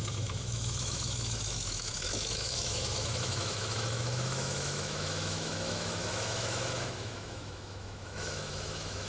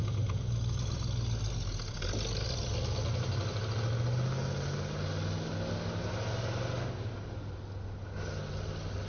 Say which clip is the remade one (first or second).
first